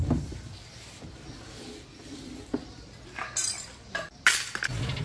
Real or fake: real